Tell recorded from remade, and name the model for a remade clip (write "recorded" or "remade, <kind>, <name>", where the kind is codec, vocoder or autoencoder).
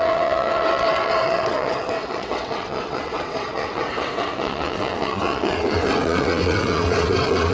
remade, vocoder, WaveNeXt